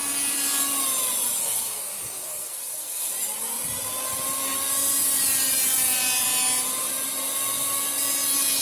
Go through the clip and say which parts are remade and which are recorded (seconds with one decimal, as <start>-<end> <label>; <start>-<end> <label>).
0.0-1.4 recorded; 1.4-3.1 remade; 3.1-8.6 recorded